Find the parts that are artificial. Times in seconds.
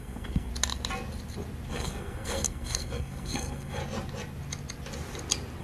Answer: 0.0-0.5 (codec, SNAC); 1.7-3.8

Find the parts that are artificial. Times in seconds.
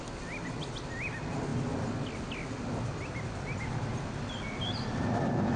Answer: none